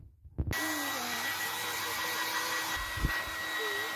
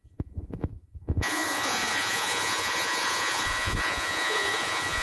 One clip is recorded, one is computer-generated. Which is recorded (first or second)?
first